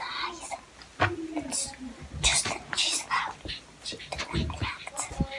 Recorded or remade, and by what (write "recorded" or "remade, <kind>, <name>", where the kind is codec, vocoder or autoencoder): recorded